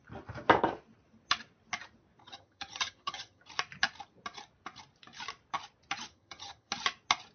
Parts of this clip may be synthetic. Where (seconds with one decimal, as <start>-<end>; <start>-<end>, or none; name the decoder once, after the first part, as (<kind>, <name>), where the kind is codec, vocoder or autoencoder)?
2.2-3.4 (vocoder, HiFi-GAN); 6.1-6.7